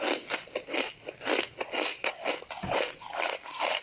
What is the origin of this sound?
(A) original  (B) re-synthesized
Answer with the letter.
A